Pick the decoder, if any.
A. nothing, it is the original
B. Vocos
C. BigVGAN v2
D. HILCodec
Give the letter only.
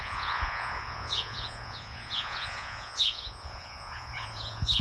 B